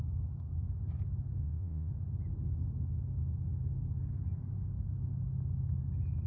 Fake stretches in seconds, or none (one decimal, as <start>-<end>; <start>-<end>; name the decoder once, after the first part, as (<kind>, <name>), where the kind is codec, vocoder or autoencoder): 1.4-1.9 (vocoder, Vocos)